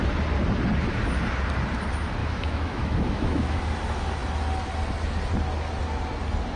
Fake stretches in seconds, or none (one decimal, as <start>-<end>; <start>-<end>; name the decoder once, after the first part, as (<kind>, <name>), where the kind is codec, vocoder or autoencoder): 2.2-3.6 (autoencoder, DAC-VAE)